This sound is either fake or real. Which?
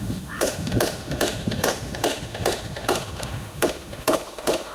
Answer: fake